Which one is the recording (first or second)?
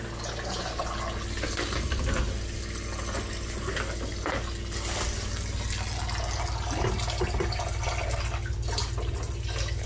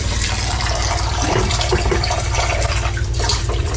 first